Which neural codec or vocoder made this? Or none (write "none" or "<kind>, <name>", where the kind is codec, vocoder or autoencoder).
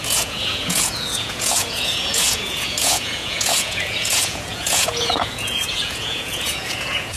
vocoder, Vocos